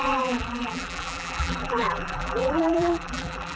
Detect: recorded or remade remade